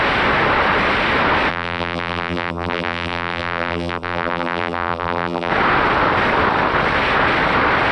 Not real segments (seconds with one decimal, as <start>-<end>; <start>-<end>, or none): 1.5-5.5